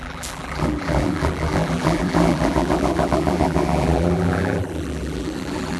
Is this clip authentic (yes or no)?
no